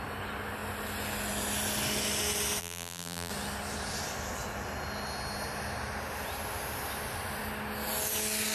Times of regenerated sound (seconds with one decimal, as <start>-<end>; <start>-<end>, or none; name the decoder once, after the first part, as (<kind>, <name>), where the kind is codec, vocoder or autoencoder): 2.6-3.3 (vocoder, BigVGAN v2)